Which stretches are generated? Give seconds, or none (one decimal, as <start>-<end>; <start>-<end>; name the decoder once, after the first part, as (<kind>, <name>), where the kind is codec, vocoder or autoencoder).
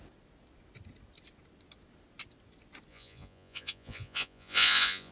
2.9-5.1 (vocoder, Vocos)